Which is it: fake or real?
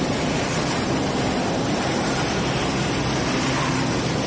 fake